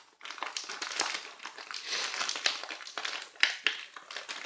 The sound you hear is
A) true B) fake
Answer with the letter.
A